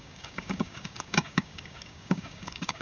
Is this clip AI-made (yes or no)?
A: yes